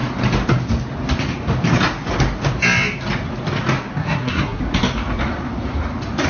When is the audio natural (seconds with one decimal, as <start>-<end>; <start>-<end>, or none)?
0.0-4.0; 4.6-6.3